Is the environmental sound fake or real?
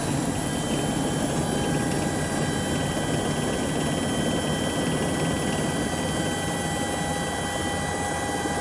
real